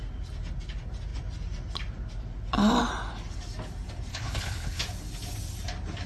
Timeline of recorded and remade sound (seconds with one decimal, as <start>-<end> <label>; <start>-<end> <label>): 0.0-4.1 recorded; 4.1-4.8 remade; 4.8-6.1 recorded